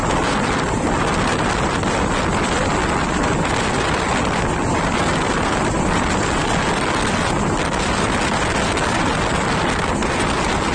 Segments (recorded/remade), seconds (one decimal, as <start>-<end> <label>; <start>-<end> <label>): 0.0-10.7 recorded